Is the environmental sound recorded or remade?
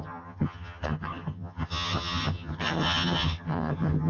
remade